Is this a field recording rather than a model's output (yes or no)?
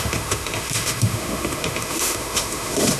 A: no